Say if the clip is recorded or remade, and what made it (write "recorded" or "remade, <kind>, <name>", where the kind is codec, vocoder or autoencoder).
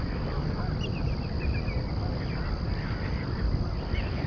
recorded